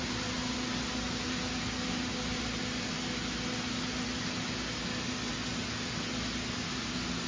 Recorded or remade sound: recorded